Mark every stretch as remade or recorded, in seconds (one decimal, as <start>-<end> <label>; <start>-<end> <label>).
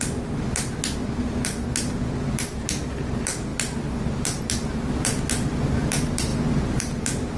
0.0-7.4 recorded